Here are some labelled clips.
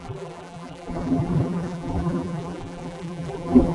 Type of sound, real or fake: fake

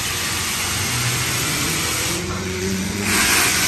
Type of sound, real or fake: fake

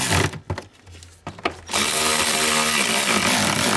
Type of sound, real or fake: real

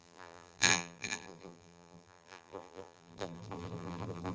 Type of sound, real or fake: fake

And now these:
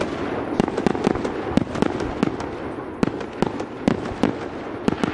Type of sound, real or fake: real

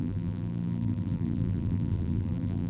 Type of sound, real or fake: fake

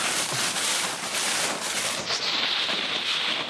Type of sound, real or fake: real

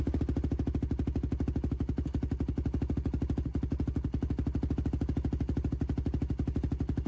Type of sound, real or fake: real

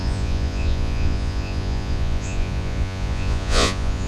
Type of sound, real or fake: fake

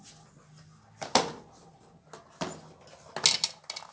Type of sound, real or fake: real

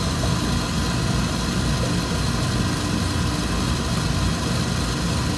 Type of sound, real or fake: real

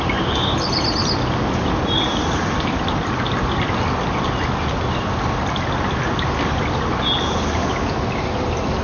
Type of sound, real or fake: real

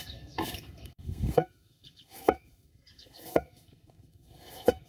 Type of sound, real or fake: fake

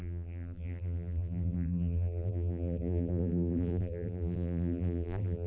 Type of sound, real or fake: fake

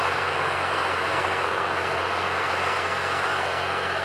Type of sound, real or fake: fake